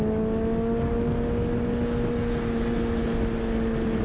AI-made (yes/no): no